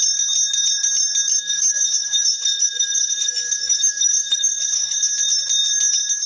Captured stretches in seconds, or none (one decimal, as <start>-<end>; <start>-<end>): 0.0-1.3; 5.1-6.3